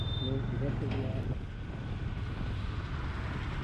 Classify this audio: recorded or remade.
recorded